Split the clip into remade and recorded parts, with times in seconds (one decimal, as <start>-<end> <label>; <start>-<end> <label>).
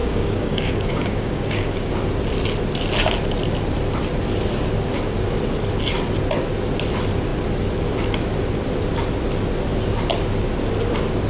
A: 0.0-1.9 remade; 1.9-11.3 recorded